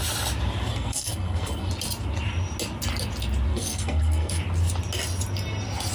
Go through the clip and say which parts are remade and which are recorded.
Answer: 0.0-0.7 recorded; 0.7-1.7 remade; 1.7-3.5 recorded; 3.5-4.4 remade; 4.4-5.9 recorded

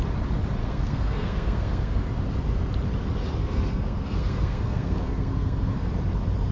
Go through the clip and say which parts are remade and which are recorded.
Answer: 0.0-0.6 recorded; 0.6-2.0 remade; 2.0-3.4 recorded; 3.4-5.9 remade; 5.9-6.5 recorded